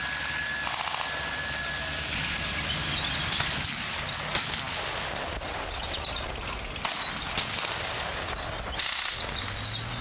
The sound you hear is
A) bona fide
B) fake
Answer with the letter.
A